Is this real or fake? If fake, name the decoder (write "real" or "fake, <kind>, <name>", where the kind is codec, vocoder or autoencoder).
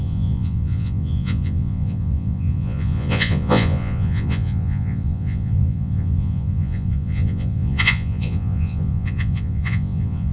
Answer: fake, vocoder, Vocos